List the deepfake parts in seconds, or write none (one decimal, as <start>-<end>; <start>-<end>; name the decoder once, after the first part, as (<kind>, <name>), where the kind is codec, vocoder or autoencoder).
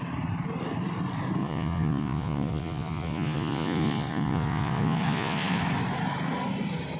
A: 1.4-5.6 (vocoder, Vocos)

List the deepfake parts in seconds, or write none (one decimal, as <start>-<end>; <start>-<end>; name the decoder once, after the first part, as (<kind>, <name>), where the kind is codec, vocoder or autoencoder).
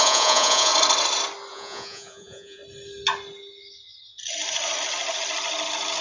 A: 0.0-0.7 (vocoder, Vocos); 1.5-2.6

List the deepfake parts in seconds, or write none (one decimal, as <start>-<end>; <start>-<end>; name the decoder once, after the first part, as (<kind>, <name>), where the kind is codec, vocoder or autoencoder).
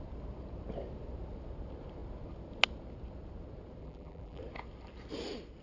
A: 3.8-4.4 (vocoder, BigVGAN v2)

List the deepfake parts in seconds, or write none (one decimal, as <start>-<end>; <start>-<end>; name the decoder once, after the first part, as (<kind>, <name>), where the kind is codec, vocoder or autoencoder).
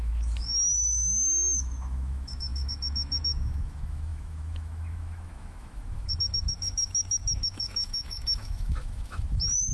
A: 0.0-9.7 (autoencoder, DAC-VAE)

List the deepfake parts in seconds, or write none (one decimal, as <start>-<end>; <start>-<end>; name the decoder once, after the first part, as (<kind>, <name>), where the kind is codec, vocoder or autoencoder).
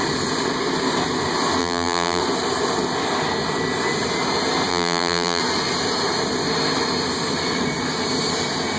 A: 1.6-2.2 (vocoder, BigVGAN v2); 4.7-5.4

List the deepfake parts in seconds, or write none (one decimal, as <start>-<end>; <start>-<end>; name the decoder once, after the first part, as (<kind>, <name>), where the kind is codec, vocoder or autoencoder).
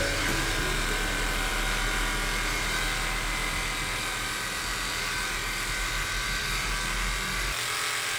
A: none